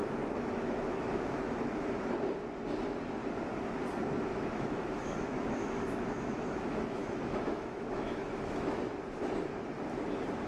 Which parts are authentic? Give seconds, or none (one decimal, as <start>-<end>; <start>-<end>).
1.9-4.3; 8.8-10.5